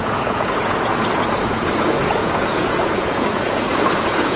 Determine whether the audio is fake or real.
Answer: fake